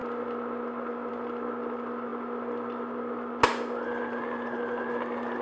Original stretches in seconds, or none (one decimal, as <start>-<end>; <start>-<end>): 0.0-5.4